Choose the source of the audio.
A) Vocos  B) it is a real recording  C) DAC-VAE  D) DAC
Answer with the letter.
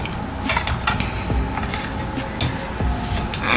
B